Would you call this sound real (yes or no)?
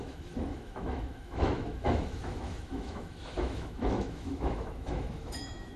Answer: no